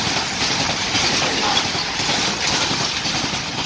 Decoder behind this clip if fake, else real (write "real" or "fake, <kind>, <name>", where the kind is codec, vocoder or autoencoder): real